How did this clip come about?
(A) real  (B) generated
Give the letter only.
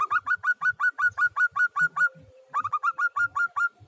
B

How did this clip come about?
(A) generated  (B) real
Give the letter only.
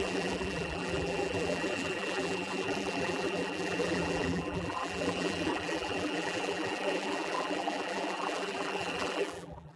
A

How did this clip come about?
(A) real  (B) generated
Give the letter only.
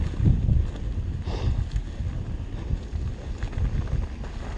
A